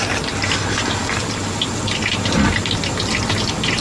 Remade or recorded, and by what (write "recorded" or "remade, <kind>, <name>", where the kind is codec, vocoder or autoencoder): recorded